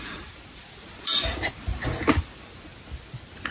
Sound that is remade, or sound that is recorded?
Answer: recorded